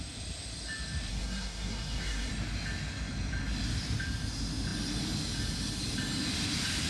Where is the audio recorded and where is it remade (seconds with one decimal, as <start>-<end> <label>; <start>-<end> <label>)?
0.0-1.1 recorded; 1.1-2.3 remade; 2.3-6.9 recorded